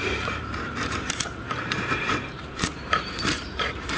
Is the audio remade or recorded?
remade